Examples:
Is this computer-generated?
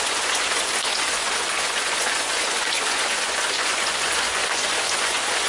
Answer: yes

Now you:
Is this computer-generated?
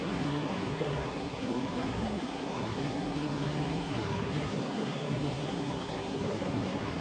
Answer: yes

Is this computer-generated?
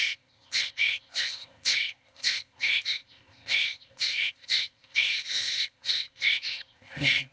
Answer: yes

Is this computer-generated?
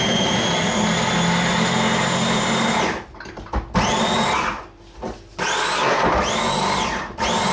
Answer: no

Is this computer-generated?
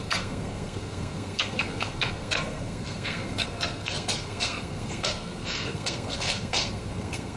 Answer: yes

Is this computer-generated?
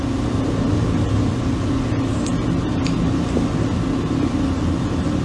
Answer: no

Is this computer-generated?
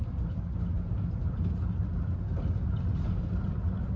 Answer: no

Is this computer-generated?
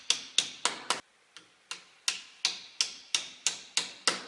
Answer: no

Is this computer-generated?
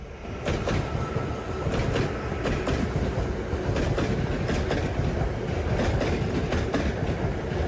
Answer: no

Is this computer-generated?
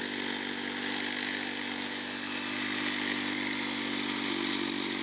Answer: no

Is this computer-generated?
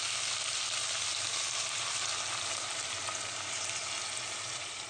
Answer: no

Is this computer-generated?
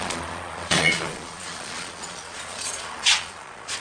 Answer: yes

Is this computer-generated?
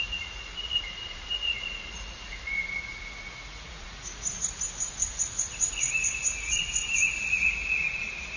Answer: yes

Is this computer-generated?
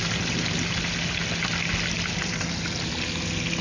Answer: no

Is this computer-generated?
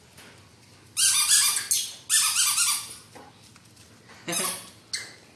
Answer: no